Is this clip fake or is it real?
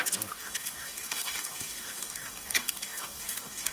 fake